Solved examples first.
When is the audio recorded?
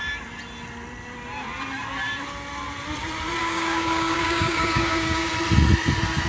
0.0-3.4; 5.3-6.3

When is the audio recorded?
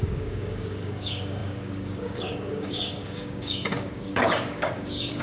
none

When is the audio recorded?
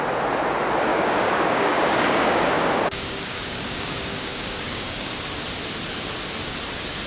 0.0-0.9; 5.2-7.1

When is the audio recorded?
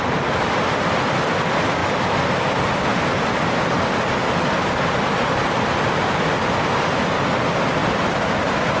0.0-8.8